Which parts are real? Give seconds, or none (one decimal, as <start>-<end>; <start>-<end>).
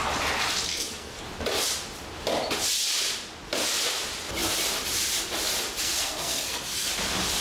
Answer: 0.0-0.7; 1.2-5.8; 6.9-7.4